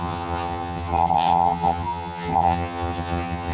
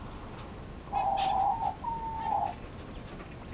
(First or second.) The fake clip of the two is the first